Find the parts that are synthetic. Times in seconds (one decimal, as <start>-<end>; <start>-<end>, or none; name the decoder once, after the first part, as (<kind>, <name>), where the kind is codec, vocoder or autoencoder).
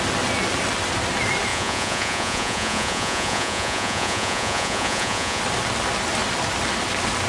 1.5-5.4 (vocoder, Vocos)